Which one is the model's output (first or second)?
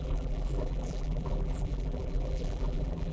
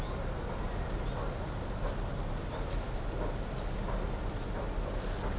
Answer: first